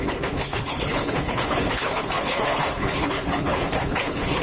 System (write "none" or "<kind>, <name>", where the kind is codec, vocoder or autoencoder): codec, HILCodec